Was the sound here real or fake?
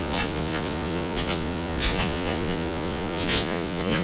fake